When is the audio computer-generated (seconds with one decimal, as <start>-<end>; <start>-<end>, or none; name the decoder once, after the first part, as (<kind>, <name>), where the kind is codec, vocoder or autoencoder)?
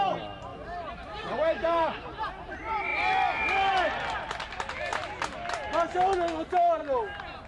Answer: 0.5-2.5 (vocoder, BigVGAN v2)